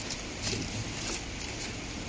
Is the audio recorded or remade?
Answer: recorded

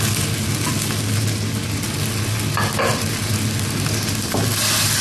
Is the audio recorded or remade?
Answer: recorded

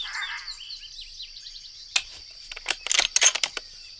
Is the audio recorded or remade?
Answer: recorded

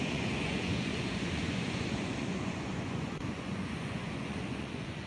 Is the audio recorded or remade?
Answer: remade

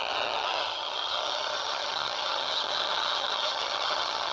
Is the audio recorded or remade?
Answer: remade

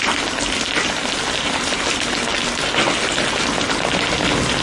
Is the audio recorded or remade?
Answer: recorded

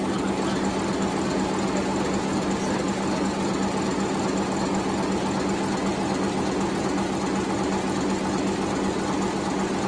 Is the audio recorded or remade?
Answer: recorded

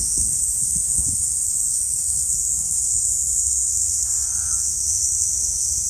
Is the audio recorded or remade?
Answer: remade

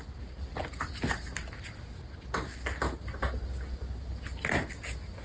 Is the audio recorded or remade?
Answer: recorded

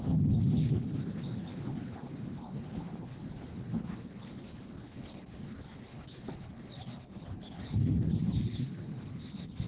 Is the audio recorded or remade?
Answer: remade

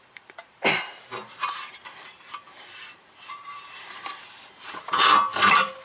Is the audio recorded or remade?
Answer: remade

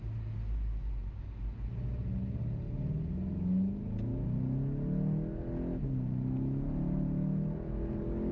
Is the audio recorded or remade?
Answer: recorded